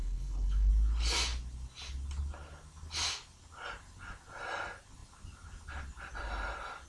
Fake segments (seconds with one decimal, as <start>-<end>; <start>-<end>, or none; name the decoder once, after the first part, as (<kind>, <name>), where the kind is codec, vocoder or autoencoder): 0.0-0.7 (codec, HILCodec)